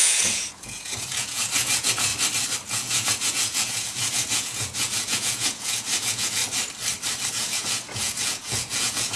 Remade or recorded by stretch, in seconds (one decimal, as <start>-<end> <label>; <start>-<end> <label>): 0.0-2.1 remade; 2.1-2.7 recorded; 2.7-6.4 remade; 6.4-7.3 recorded; 7.3-9.2 remade